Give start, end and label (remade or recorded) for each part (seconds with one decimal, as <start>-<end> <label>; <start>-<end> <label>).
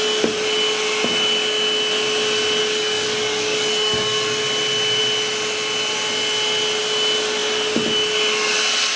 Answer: 0.0-2.6 recorded; 2.6-4.4 remade; 4.4-9.0 recorded